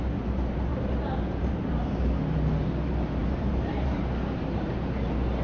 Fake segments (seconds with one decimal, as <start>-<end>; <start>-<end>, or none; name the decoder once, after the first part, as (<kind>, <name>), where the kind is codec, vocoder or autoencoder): 0.7-1.9 (vocoder, BigVGAN v2); 3.2-4.7